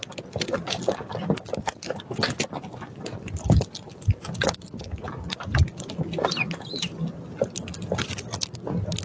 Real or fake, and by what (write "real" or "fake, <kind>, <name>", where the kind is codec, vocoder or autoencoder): real